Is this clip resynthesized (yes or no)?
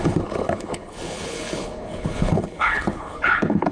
yes